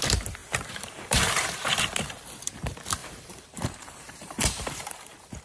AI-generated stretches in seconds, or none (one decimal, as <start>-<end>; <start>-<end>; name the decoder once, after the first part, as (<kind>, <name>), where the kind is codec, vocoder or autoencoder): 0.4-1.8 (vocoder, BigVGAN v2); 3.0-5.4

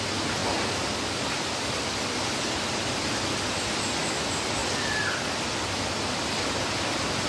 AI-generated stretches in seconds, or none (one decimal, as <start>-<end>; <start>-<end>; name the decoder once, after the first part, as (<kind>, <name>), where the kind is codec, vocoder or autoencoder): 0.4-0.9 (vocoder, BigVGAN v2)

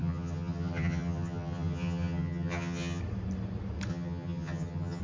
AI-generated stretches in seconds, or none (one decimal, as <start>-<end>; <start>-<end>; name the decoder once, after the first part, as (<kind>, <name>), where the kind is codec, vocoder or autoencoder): 0.0-3.0 (vocoder, HiFi-GAN); 3.9-5.0